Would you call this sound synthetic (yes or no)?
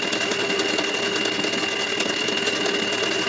no